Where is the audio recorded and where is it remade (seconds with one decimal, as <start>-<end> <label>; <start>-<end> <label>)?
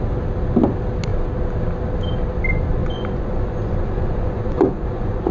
0.0-2.8 recorded; 2.8-5.3 remade